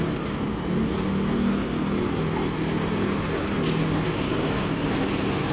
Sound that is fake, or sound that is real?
real